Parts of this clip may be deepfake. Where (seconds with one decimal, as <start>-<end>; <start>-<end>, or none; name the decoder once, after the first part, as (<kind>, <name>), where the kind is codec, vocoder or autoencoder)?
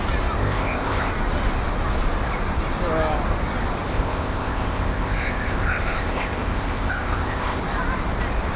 0.4-1.1 (codec, ZipCodec); 3.9-7.6